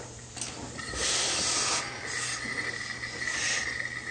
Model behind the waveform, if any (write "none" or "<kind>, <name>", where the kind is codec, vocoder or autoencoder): none